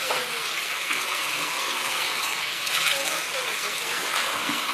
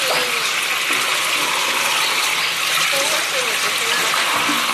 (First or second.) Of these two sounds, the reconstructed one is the first